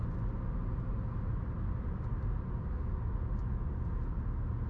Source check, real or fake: real